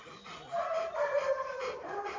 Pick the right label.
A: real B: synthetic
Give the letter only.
B